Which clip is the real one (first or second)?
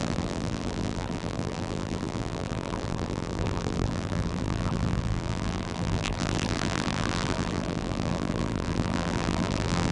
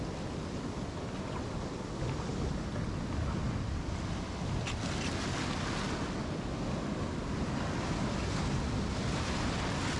second